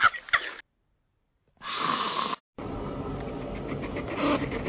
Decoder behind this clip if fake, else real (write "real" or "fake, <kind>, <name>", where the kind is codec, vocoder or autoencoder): real